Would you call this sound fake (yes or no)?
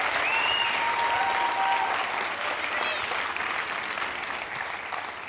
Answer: no